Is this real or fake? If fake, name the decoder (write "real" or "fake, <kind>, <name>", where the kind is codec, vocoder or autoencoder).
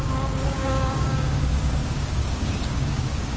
fake, codec, DAC